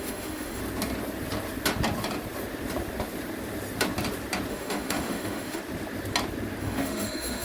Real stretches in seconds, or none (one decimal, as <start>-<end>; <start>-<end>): 0.6-4.5; 5.6-6.6